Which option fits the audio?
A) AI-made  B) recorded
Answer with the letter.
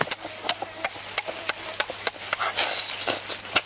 B